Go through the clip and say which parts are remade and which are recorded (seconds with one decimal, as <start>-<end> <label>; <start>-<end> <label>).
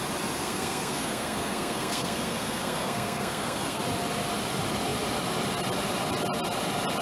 0.0-0.4 recorded; 0.4-3.8 remade; 3.8-7.0 recorded